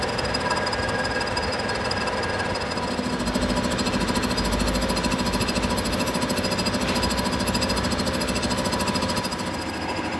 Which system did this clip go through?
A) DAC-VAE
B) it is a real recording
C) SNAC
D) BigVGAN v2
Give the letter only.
B